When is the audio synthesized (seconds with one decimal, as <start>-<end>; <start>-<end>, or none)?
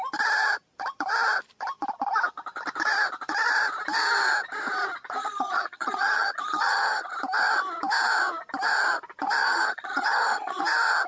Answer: 5.2-7.1; 9.4-10.6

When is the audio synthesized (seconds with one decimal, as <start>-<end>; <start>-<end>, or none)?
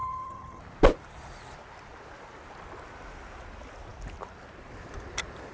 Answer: 0.0-0.6